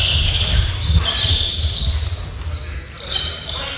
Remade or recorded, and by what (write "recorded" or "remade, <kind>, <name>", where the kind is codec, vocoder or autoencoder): recorded